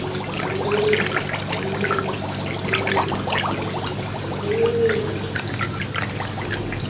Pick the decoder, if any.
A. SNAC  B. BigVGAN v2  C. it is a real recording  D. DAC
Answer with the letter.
C